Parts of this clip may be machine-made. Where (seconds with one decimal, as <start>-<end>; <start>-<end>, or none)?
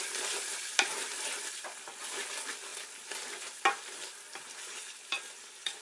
0.0-2.7; 3.7-5.8